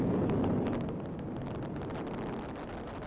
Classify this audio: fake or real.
real